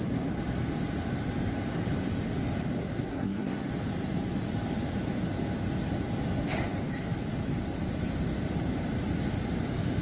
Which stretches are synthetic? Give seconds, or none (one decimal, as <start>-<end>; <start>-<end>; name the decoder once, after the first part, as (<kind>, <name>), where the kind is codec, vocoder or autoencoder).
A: 2.8-3.7 (codec, SNAC)